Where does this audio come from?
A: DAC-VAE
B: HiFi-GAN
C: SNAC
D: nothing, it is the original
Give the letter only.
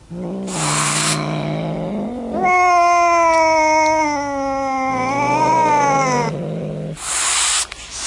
D